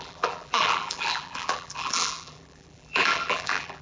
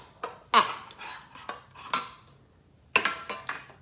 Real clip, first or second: second